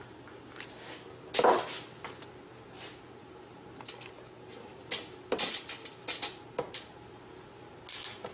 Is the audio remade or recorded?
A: recorded